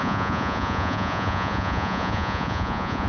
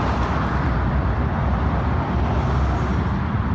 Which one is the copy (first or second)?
first